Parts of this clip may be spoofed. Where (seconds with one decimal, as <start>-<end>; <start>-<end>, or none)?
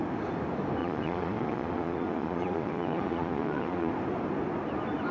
0.8-3.9